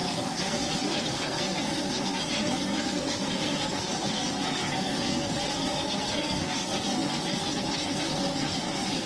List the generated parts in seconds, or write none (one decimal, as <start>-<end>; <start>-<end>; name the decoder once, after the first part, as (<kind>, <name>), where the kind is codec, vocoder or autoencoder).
0.0-9.1 (codec, SNAC)